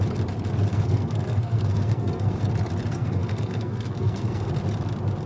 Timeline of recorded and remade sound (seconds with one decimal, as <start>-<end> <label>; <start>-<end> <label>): 0.0-0.7 recorded; 0.7-2.5 remade; 2.5-2.9 recorded; 2.9-4.5 remade; 4.5-5.3 recorded